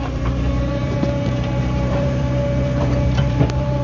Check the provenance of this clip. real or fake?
fake